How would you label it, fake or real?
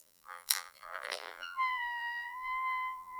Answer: fake